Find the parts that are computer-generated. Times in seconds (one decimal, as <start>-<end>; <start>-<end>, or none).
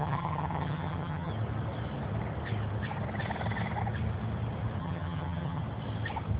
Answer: 0.0-1.3; 4.8-5.6